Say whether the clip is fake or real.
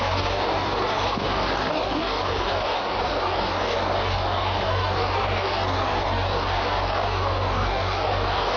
fake